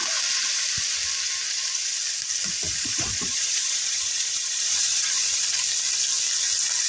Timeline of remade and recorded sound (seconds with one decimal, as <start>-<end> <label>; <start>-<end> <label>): 0.0-2.7 recorded; 2.7-5.6 remade; 5.6-6.9 recorded